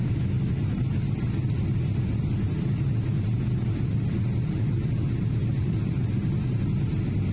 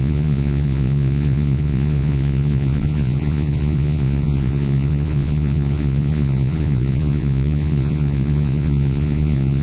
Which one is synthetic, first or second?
second